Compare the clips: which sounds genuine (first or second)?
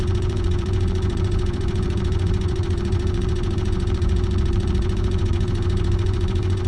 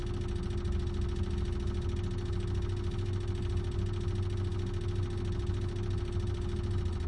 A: second